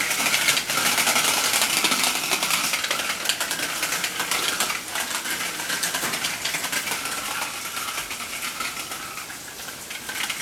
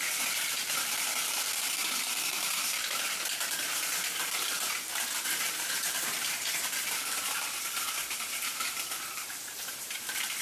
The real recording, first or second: first